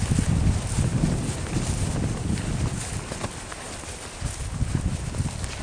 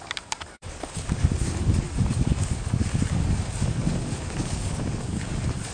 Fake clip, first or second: second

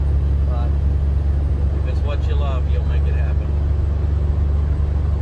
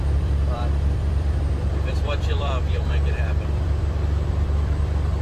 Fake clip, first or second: second